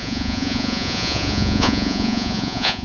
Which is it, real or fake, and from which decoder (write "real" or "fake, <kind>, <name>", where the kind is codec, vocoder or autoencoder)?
fake, vocoder, Vocos